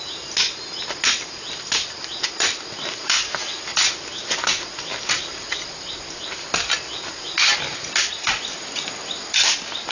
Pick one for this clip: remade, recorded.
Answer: recorded